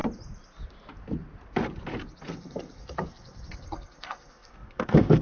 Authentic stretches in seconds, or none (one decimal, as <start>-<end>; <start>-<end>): 0.0-2.3